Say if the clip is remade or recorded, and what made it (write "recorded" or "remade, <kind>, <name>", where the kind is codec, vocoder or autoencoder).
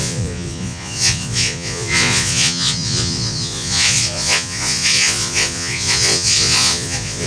remade, vocoder, Vocos